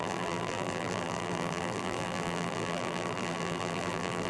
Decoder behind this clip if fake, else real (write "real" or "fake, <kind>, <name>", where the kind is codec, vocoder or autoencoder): fake, vocoder, BigVGAN v2